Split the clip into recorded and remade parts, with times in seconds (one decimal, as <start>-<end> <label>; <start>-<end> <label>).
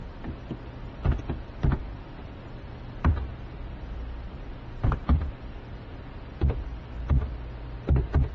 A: 0.0-2.2 recorded; 2.2-7.0 remade; 7.0-8.3 recorded